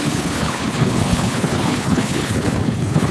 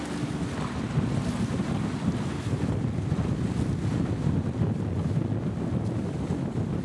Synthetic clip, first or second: first